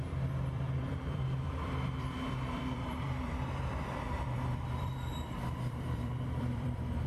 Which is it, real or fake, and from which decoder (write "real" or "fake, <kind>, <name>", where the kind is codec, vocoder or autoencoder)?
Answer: fake, vocoder, BigVGAN v2